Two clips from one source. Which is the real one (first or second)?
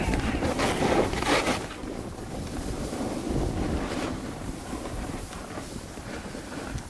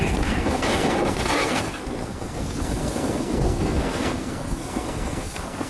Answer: first